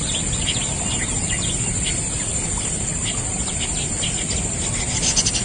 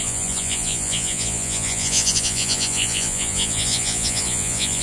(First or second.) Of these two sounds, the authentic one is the first